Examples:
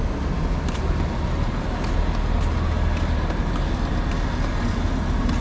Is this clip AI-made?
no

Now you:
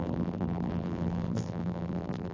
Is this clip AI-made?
yes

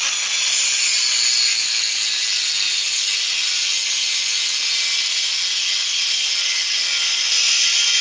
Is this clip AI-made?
no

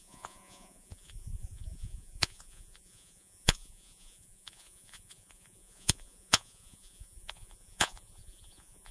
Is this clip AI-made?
yes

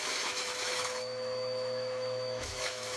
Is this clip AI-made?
yes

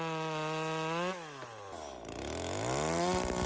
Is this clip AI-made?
no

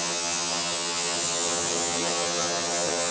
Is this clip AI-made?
yes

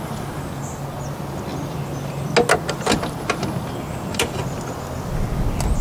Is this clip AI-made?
no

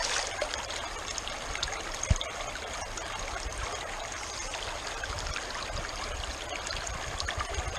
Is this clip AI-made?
no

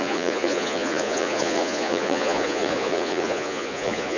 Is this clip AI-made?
yes